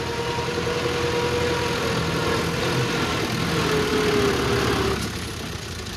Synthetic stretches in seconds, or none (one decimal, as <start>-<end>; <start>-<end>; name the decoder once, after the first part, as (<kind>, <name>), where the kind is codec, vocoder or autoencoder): none